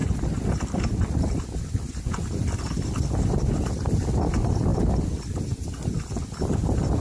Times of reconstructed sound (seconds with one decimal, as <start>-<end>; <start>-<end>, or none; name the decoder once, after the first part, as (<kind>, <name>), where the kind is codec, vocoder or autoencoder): none